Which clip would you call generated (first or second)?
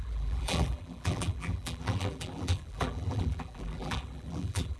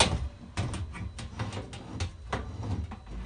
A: first